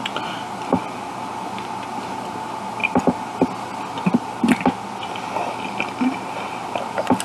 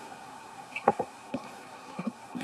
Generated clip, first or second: second